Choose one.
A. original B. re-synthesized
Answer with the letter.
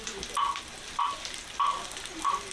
A